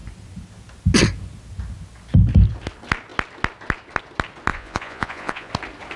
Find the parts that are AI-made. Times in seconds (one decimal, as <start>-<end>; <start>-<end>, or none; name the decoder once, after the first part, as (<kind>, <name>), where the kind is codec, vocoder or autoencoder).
4.5-5.5 (vocoder, Vocos)